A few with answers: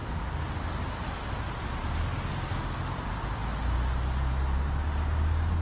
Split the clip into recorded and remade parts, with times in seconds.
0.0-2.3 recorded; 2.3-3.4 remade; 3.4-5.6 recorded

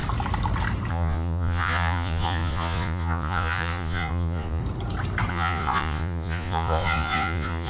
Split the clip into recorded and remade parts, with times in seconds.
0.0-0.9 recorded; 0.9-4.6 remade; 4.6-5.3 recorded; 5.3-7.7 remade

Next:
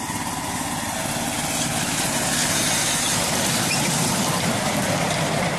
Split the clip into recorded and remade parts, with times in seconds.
0.0-2.4 recorded; 2.4-4.1 remade; 4.1-5.6 recorded

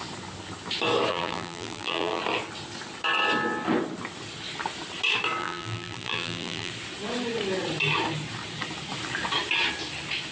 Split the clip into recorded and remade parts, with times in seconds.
0.0-1.1 recorded; 1.1-2.2 remade; 2.2-5.4 recorded; 5.4-6.7 remade; 6.7-10.3 recorded

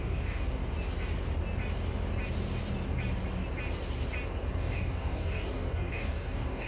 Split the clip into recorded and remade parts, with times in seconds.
0.0-0.6 remade; 0.6-4.6 recorded; 4.6-6.7 remade

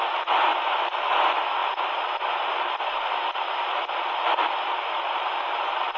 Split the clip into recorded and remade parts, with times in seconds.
0.0-6.0 recorded

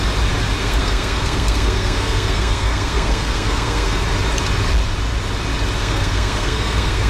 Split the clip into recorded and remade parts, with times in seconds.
0.0-0.6 recorded; 0.6-4.0 remade; 4.0-5.8 recorded; 5.8-7.1 remade

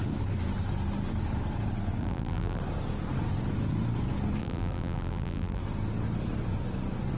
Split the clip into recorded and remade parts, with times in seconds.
0.0-2.0 recorded; 2.0-2.6 remade; 2.6-4.4 recorded; 4.4-5.6 remade; 5.6-7.2 recorded